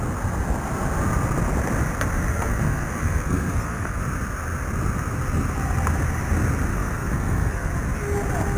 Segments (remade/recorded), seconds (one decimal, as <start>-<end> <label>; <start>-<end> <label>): 0.0-2.3 recorded; 2.3-4.0 remade; 4.0-6.7 recorded; 6.7-7.7 remade; 7.7-8.6 recorded